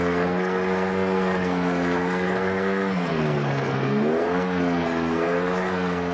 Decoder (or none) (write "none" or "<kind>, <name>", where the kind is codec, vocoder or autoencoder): codec, SNAC